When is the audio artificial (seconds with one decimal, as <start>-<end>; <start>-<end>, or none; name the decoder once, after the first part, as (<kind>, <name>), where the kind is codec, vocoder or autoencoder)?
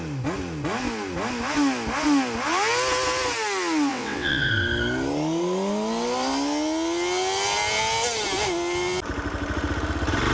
3.9-4.5 (vocoder, WaveNeXt)